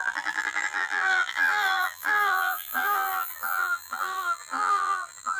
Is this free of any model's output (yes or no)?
no